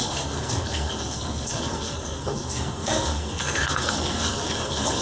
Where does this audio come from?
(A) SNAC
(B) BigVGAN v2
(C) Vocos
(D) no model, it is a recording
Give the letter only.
A